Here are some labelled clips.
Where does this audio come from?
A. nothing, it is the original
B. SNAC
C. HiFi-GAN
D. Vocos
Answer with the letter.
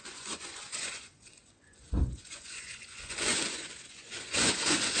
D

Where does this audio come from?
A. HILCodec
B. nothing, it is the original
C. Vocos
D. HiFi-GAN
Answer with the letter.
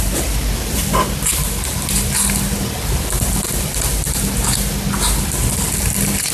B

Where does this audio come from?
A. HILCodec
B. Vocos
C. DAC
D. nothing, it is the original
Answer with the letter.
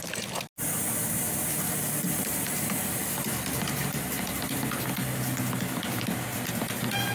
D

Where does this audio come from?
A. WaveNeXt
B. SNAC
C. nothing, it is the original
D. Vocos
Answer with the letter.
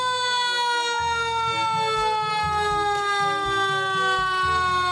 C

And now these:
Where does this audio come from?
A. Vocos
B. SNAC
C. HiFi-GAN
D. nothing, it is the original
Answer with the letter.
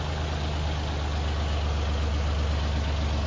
D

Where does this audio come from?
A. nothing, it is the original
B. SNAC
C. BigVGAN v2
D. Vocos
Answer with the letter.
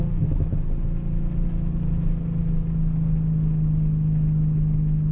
A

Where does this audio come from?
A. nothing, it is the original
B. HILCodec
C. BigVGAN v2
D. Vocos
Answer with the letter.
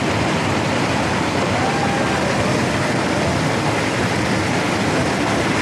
A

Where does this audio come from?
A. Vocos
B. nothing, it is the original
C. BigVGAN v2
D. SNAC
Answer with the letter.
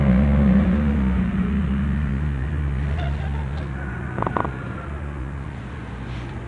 A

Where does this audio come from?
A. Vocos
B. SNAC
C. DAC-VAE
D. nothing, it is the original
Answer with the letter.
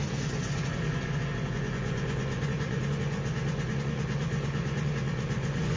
A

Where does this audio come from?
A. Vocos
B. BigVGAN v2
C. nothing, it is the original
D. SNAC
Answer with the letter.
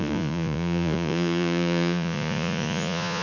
A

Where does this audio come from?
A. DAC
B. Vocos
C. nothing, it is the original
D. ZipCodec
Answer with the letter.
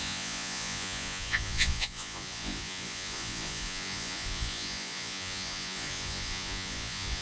B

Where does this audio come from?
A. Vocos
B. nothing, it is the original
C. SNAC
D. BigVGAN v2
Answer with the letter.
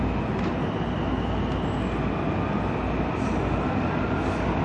B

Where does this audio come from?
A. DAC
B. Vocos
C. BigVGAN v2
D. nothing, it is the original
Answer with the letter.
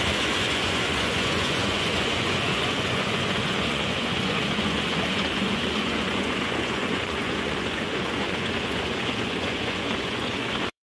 B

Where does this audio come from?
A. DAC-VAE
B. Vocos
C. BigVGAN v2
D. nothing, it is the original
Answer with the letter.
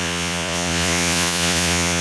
B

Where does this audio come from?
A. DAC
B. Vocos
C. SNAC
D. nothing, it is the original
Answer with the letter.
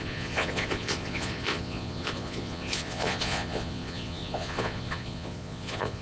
B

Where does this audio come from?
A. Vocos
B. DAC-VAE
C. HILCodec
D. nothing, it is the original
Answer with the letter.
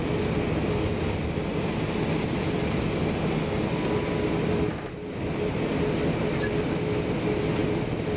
D